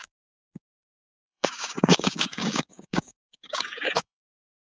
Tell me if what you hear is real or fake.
fake